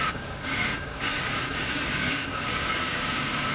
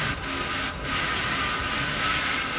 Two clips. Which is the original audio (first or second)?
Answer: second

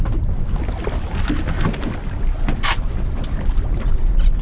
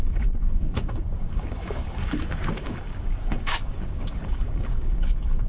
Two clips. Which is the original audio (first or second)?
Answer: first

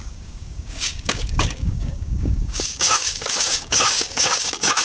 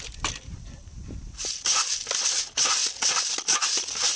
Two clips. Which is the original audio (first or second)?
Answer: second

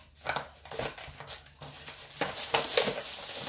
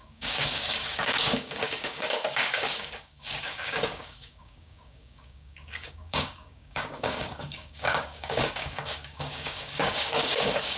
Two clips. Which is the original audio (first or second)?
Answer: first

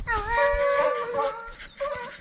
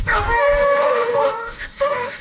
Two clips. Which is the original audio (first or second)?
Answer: first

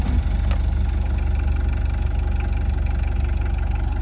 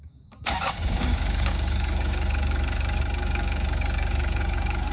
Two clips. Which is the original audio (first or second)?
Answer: first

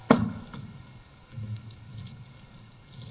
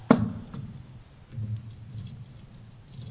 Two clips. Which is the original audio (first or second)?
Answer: second